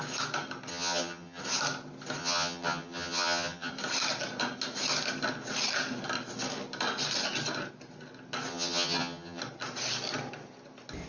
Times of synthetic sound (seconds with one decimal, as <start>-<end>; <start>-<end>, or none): 0.7-1.4; 2.2-3.7; 8.5-9.4